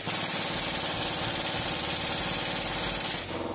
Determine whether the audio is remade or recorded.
recorded